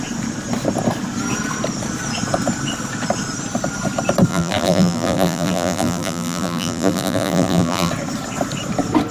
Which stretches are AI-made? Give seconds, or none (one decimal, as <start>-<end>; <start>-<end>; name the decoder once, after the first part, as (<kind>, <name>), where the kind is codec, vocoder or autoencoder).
4.3-7.9 (vocoder, BigVGAN v2)